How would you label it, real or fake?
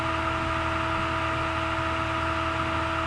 real